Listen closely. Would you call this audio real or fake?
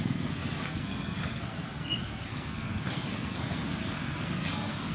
fake